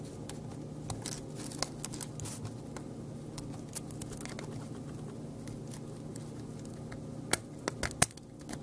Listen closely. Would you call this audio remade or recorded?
recorded